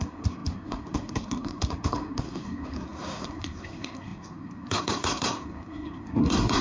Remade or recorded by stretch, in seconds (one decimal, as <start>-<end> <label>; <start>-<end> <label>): 0.0-6.6 remade